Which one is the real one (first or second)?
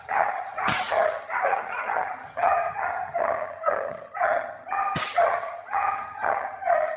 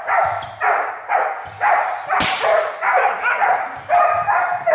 second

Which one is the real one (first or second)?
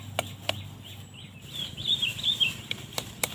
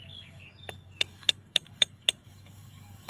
first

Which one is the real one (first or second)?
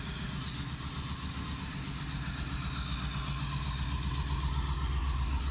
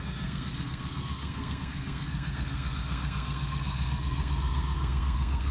first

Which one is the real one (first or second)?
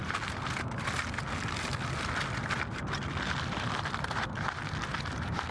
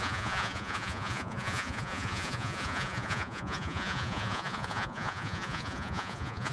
first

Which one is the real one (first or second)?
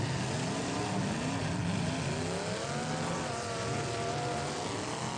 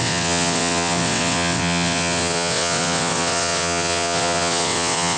first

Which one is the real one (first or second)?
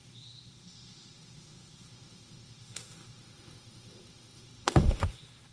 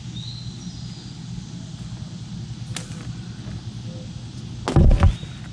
second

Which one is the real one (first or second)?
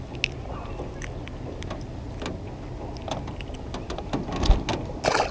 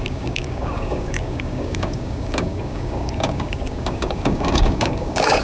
first